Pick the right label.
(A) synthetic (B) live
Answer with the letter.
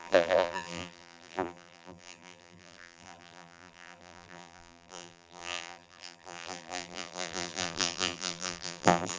A